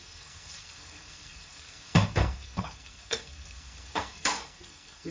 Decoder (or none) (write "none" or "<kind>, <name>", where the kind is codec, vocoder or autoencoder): codec, SNAC